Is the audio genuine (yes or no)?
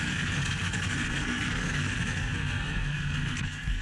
no